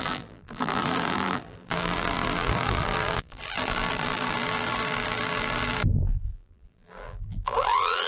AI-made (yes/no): yes